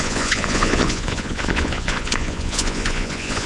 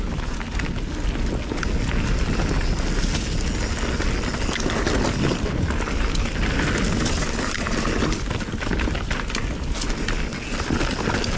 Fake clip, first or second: first